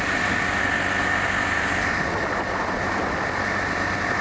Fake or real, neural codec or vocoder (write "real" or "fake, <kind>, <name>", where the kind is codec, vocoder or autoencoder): real